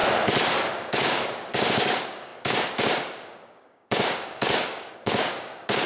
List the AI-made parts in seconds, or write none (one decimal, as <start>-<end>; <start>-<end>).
0.7-5.9